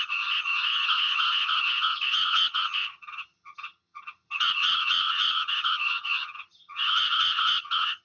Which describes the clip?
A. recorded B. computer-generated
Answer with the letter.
B